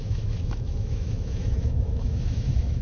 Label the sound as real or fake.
fake